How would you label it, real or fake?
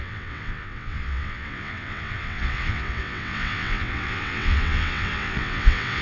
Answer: fake